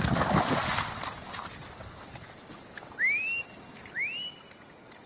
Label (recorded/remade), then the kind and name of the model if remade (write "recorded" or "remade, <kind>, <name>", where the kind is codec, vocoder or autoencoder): recorded